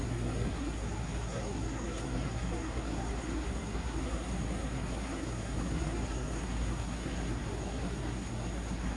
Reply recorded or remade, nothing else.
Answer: remade